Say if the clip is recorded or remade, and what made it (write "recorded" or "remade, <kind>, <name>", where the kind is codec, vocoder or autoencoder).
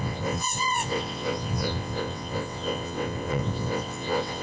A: remade, vocoder, WaveNeXt